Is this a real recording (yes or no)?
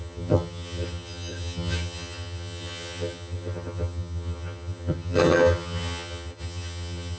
no